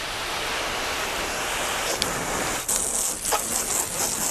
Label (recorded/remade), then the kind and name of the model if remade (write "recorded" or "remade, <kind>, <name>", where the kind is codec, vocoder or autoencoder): recorded